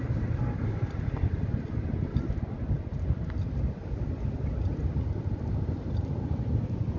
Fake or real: real